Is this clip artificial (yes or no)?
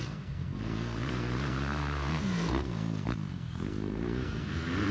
yes